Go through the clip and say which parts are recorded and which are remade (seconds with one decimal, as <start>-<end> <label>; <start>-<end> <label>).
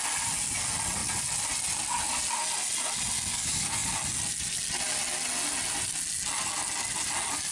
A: 0.0-3.3 recorded; 3.3-3.9 remade; 3.9-7.5 recorded